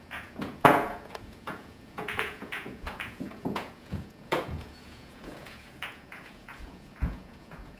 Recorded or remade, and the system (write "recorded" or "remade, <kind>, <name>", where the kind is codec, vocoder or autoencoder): remade, vocoder, Vocos